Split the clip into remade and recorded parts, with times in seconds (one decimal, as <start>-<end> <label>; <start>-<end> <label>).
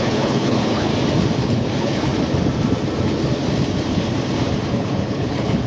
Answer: 0.0-0.9 remade; 0.9-1.4 recorded; 1.4-2.1 remade; 2.1-4.7 recorded; 4.7-5.7 remade